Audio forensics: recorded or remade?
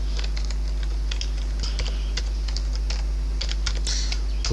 recorded